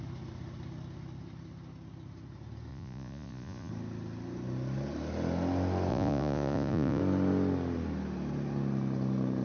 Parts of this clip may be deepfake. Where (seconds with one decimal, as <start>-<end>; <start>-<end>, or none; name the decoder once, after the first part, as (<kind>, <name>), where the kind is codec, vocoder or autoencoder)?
2.7-3.7 (vocoder, Vocos); 5.9-7.0